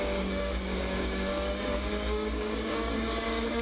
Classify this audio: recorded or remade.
remade